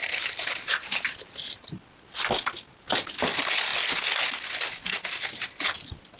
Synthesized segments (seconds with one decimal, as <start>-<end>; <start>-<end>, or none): 0.0-1.7